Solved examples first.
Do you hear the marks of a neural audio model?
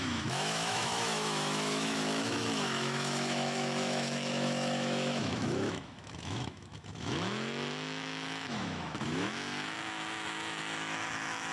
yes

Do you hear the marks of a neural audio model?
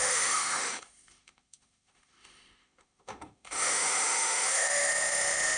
yes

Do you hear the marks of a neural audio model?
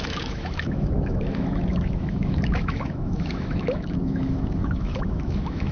yes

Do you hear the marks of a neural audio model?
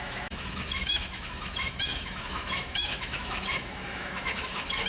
yes